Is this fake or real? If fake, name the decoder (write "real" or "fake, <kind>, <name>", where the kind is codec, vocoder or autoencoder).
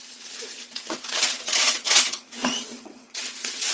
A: fake, vocoder, WaveNeXt